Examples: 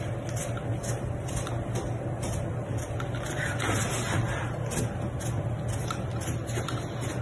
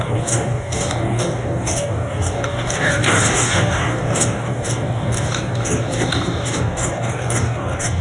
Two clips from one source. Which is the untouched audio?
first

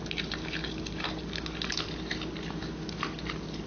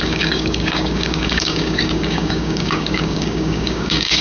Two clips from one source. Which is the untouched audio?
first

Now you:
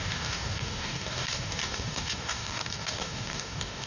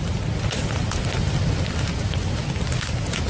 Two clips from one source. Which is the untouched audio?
second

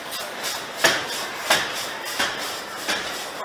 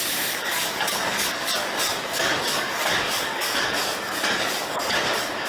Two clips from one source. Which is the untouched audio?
first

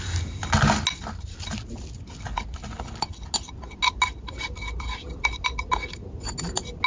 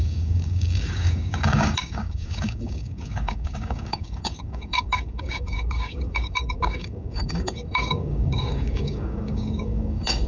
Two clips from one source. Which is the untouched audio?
first